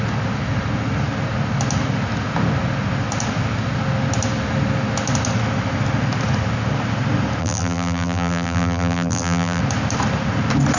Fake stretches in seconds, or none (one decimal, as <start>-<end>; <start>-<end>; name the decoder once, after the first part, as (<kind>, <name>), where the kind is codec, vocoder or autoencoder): 7.4-9.6 (vocoder, BigVGAN v2)